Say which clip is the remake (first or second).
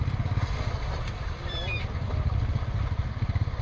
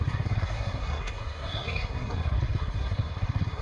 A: second